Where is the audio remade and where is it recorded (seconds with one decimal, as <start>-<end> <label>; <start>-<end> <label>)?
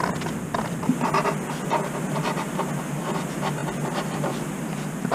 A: 0.0-3.6 recorded; 3.6-4.5 remade; 4.5-5.1 recorded